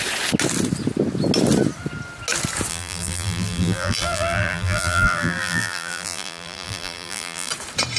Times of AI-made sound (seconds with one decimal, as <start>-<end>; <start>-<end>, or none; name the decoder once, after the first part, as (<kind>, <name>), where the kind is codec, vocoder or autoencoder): 2.7-7.5 (vocoder, BigVGAN v2)